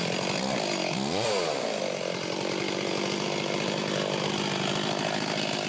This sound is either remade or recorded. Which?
remade